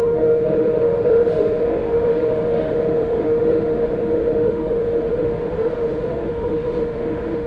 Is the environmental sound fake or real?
fake